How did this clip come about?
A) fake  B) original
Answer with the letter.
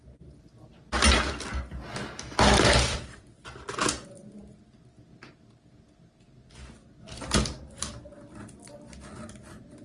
B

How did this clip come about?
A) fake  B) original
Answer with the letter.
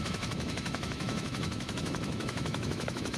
A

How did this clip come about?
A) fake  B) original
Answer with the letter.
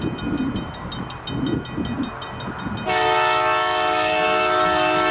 B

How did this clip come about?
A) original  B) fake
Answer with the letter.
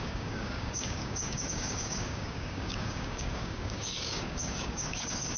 B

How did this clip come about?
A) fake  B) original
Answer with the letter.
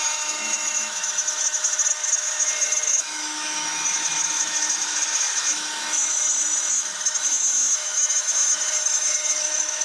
A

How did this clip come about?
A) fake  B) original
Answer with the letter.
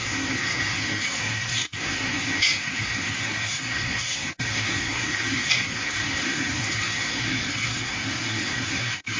A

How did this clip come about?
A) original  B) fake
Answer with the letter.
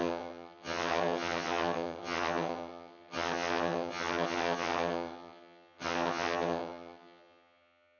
B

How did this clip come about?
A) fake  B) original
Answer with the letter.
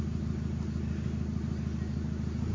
B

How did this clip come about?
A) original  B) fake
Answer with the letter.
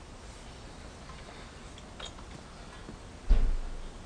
A